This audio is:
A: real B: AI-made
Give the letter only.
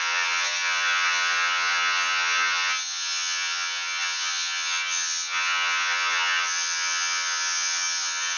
B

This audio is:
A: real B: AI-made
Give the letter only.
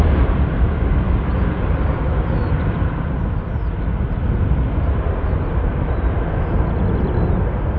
A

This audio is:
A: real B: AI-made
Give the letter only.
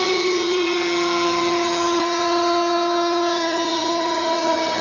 B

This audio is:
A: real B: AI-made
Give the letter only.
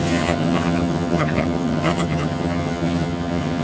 B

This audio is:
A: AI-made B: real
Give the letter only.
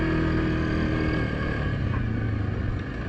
B